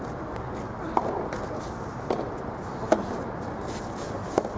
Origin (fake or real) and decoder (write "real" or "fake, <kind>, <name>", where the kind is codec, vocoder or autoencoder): real